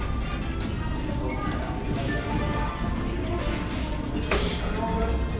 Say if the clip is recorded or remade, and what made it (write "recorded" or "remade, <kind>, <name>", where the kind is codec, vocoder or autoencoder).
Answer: recorded